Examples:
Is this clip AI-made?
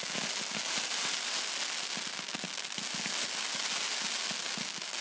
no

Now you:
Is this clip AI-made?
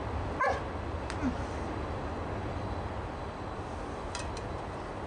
no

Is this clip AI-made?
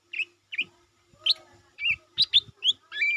no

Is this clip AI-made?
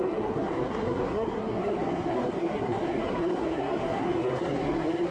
yes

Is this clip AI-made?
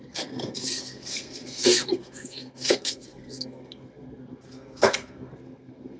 yes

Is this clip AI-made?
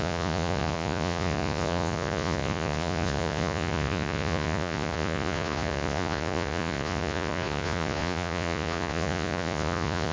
yes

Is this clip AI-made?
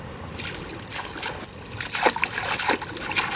yes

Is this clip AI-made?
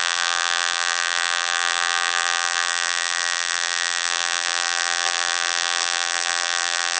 yes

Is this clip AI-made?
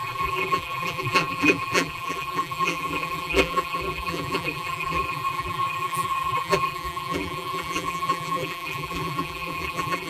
yes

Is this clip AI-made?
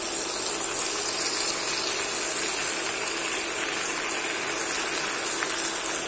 no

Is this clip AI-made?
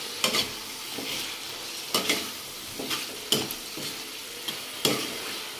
no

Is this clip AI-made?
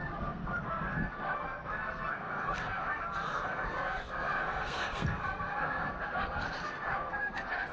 yes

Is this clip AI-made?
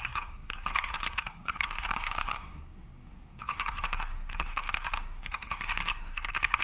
yes